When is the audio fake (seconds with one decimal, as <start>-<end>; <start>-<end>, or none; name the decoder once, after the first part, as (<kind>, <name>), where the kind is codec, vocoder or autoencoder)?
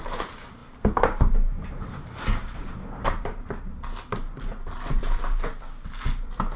0.6-3.4 (vocoder, BigVGAN v2)